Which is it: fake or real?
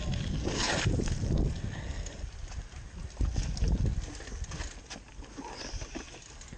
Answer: real